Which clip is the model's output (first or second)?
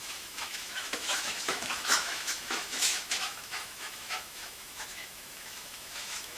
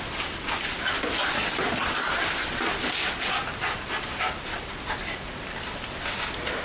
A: first